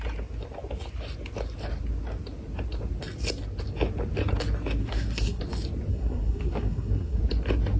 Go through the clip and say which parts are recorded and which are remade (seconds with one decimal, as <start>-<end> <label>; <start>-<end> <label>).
0.0-4.8 recorded; 4.8-5.4 remade; 5.4-5.9 recorded; 5.9-7.2 remade; 7.2-7.8 recorded